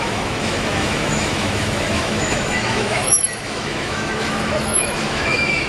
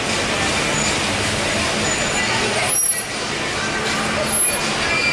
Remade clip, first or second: first